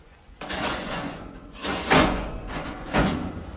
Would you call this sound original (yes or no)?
no